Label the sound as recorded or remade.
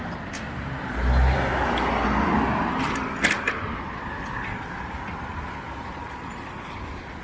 recorded